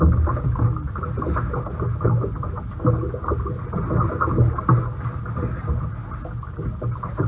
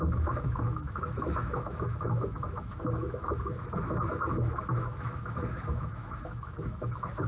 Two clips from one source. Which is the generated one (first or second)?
second